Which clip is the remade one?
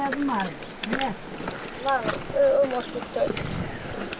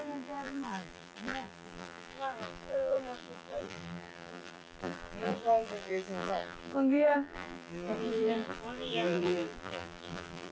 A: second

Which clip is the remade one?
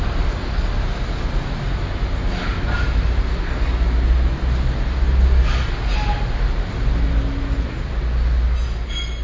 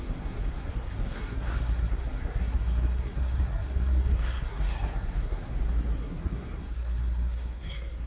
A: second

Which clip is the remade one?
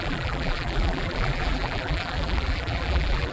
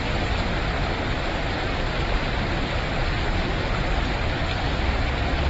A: first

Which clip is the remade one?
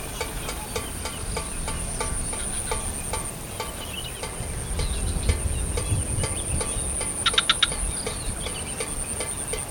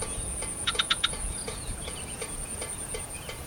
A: second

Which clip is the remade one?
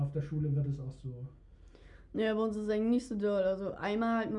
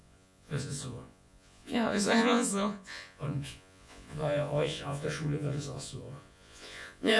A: second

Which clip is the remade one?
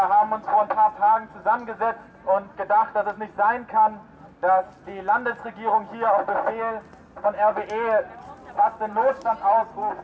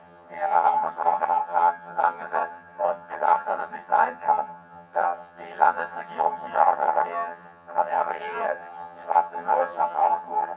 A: second